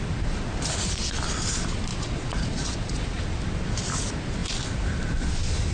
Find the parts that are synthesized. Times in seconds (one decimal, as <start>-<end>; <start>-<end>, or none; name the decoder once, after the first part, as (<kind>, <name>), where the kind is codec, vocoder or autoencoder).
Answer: 1.9-3.2 (vocoder, Vocos)